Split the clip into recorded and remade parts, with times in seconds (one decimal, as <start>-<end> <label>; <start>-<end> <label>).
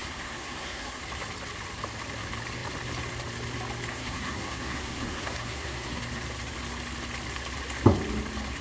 0.0-1.0 remade; 1.0-3.9 recorded; 3.9-6.0 remade; 6.0-8.6 recorded